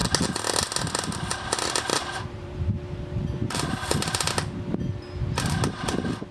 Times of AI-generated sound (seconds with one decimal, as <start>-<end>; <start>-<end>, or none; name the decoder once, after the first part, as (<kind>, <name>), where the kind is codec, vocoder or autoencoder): 1.9-2.6 (vocoder, BigVGAN v2)